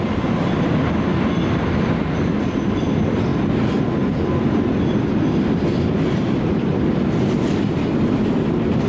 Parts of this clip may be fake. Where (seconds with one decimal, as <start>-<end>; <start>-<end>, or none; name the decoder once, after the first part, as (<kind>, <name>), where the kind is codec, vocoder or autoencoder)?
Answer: none